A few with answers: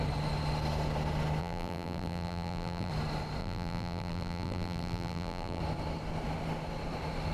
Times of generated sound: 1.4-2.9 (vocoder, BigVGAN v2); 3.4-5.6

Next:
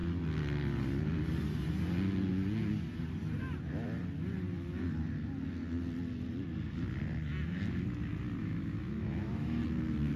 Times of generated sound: 8.4-9.6 (autoencoder, DAC-VAE)

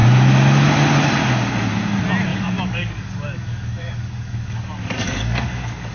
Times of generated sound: 2.3-5.9 (codec, DAC)

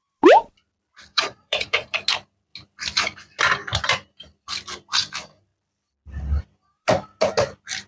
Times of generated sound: 1.1-2.0 (vocoder, Vocos)

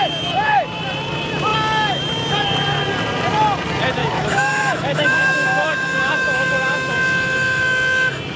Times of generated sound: 4.0-6.9 (autoencoder, DAC-VAE)

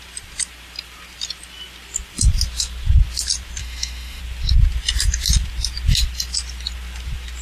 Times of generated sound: 3.6-4.2 (autoencoder, DAC-VAE)

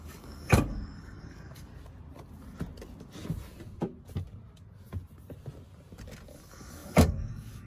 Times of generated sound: 0.0-1.7 (codec, DAC); 6.3-7.7

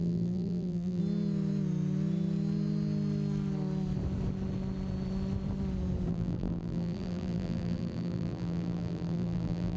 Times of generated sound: 0.0-1.0 (vocoder, BigVGAN v2); 6.1-9.8